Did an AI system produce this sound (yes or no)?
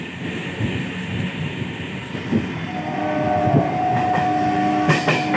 no